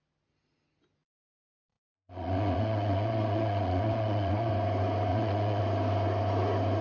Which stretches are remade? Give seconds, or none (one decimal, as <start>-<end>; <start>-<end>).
1.7-4.5; 5.1-5.6